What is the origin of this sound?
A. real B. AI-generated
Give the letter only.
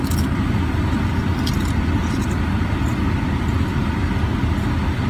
A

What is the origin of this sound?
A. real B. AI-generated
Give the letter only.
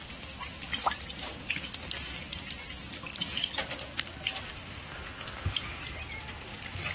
A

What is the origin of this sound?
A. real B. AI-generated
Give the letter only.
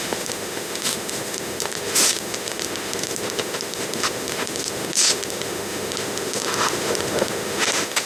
B